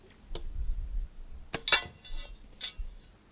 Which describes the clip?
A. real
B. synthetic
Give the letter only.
A